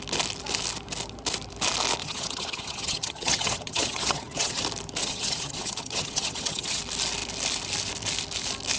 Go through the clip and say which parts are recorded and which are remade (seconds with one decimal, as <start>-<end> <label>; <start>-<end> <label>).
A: 0.0-2.0 recorded; 2.0-4.6 remade; 4.6-5.0 recorded; 5.0-6.8 remade; 6.8-8.8 recorded